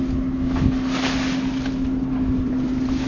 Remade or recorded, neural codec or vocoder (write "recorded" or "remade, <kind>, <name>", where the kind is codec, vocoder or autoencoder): recorded